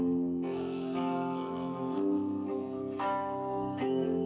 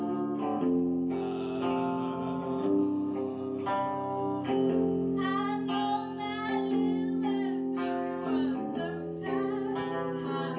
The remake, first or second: first